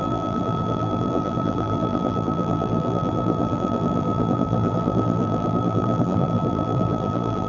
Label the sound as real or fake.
fake